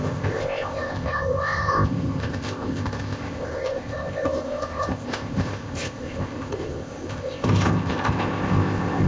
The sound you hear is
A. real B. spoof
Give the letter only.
B